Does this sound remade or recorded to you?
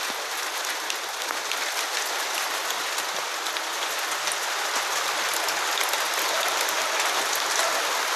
recorded